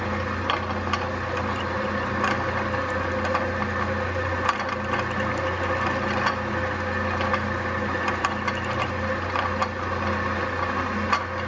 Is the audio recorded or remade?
recorded